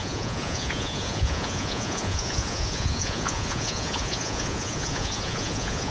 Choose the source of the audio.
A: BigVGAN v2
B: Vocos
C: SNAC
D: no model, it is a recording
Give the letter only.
B